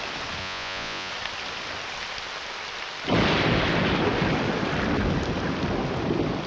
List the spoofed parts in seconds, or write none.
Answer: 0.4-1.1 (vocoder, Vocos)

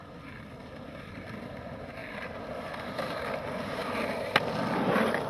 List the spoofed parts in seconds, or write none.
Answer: none

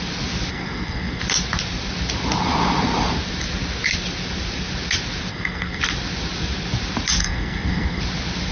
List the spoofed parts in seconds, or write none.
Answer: 0.5-1.2 (codec, SNAC); 5.3-5.8; 7.2-8.0